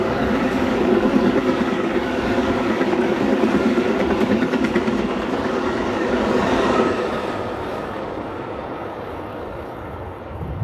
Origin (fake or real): fake